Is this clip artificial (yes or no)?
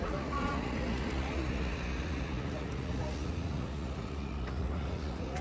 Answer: yes